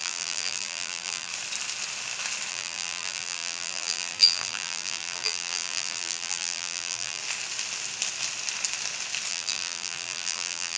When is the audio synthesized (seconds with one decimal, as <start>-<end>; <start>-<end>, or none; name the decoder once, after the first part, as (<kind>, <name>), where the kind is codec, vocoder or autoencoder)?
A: 0.0-1.3 (vocoder, BigVGAN v2); 2.5-7.2; 9.3-10.8